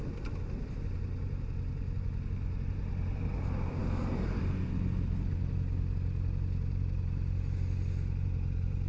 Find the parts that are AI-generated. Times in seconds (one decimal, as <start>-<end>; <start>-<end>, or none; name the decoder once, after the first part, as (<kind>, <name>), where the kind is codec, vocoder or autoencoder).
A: none